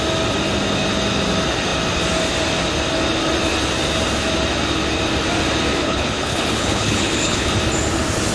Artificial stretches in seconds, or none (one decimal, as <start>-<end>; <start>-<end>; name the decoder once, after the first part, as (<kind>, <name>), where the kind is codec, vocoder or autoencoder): 5.8-7.5 (codec, HILCodec)